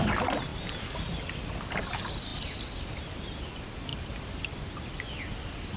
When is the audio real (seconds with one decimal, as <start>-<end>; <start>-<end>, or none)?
0.0-5.8